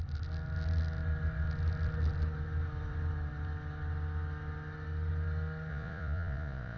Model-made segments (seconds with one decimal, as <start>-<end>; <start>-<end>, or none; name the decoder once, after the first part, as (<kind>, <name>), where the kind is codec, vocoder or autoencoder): 5.7-6.8 (vocoder, Vocos)